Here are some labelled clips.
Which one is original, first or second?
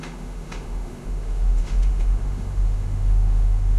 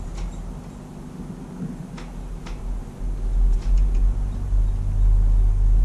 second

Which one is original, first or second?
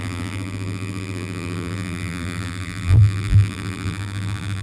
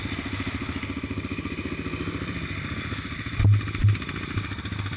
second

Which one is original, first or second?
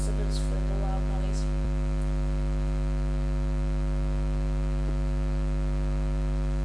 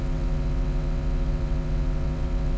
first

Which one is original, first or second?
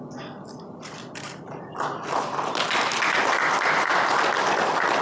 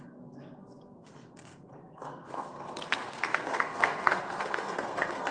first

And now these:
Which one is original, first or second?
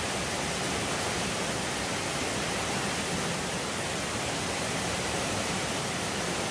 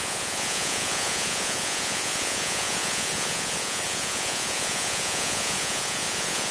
first